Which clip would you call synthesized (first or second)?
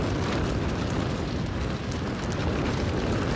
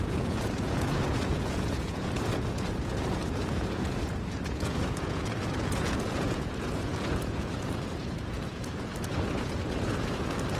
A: second